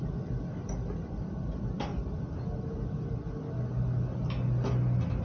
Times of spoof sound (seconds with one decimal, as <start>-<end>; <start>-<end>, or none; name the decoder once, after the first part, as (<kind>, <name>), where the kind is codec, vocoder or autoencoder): none